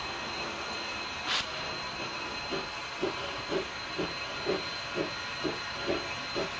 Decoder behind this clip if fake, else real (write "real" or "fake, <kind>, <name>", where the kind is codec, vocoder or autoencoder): real